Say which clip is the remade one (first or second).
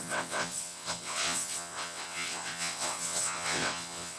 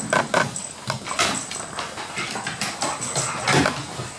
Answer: first